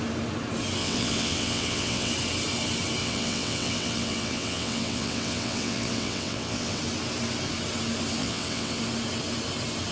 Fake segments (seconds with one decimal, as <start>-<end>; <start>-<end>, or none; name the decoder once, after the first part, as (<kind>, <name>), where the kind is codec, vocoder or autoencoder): 0.8-2.1 (vocoder, WaveNeXt); 3.0-6.8; 8.2-8.8